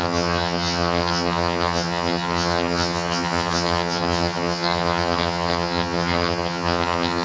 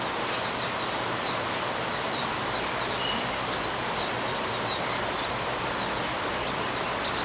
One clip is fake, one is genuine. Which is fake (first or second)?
first